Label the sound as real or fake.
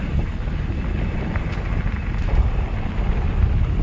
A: real